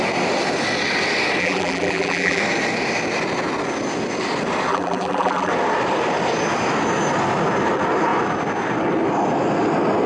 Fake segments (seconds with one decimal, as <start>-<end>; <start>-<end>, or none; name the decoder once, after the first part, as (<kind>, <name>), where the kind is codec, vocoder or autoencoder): 1.4-2.4 (vocoder, BigVGAN v2); 4.7-5.5